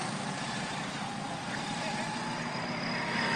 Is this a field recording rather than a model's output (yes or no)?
yes